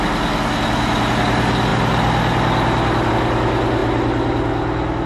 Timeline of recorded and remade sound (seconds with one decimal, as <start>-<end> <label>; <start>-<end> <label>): 0.0-5.1 recorded